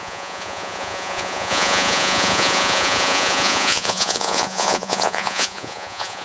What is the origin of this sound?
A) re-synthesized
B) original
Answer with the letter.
A